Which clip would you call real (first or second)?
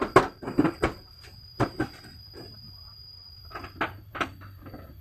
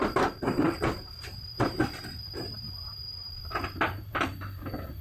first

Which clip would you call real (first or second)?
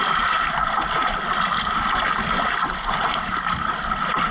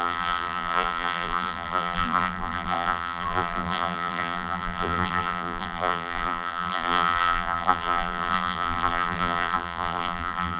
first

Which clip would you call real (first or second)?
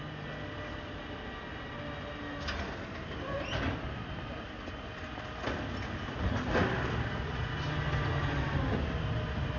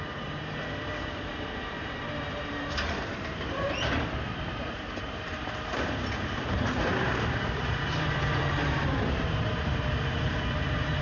first